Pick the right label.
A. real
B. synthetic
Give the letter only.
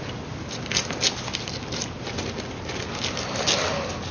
A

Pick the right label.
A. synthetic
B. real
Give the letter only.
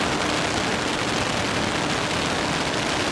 B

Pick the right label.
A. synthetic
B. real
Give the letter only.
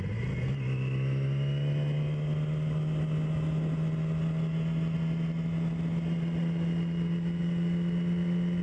B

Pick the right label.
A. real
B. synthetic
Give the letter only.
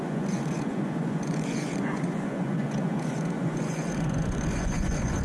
B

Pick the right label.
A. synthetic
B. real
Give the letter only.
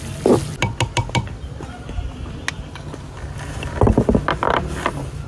B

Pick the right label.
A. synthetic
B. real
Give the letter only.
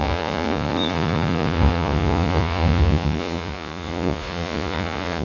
A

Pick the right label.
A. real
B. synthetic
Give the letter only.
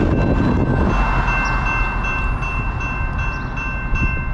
A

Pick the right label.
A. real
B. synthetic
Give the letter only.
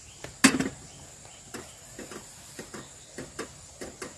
A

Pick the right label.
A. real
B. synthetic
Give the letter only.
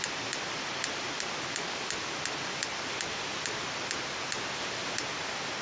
A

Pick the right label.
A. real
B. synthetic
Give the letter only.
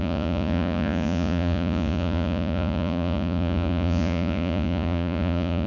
B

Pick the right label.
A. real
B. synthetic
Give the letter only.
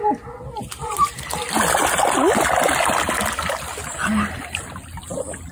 A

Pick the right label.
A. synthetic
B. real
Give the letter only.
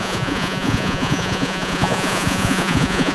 A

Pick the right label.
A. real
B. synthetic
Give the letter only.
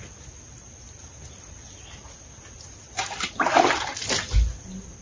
A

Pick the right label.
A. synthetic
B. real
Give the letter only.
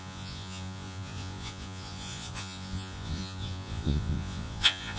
A